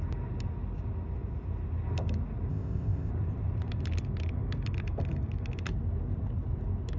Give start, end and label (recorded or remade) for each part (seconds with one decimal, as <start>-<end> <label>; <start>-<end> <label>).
0.0-2.5 recorded; 2.5-3.1 remade; 3.1-7.0 recorded